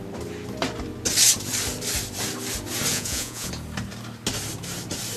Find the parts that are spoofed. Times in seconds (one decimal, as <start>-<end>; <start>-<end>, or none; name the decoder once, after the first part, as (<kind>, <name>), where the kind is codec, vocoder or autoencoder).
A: 2.9-3.5 (vocoder, Vocos)